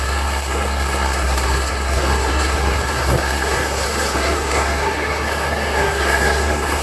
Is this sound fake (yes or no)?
yes